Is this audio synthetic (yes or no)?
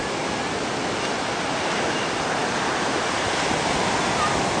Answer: no